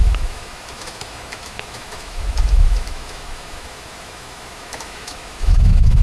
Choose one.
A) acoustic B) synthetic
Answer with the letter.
B